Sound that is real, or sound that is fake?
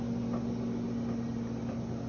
real